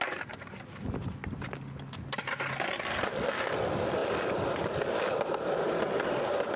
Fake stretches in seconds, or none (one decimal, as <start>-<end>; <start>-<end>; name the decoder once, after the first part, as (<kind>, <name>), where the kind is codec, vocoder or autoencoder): 4.0-4.7 (vocoder, BigVGAN v2)